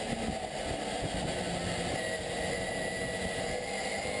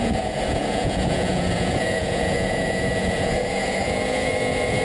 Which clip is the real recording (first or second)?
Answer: first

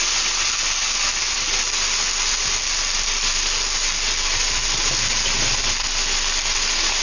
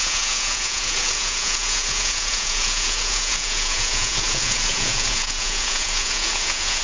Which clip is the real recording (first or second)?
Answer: first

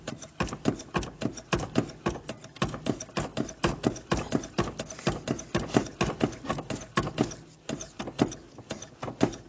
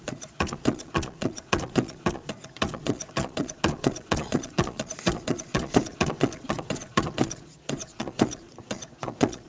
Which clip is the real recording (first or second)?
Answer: first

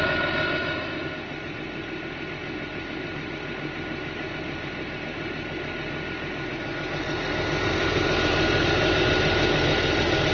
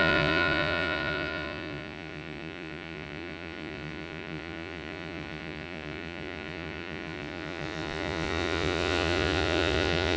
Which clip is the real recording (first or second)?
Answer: first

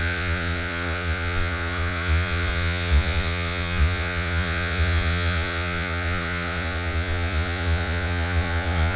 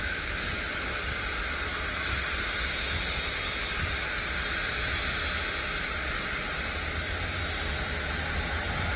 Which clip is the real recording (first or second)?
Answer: second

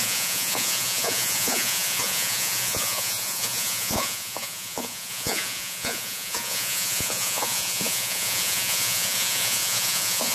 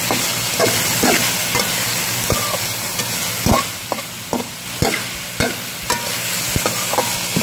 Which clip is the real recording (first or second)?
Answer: second